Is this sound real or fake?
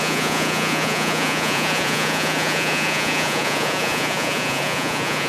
fake